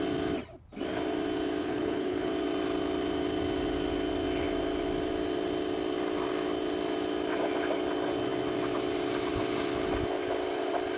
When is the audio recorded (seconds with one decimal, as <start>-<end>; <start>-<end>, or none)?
0.0-1.6; 2.3-11.0